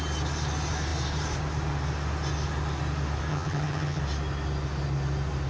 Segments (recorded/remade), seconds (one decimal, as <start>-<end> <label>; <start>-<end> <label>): 0.0-3.3 recorded; 3.3-4.0 remade; 4.0-5.5 recorded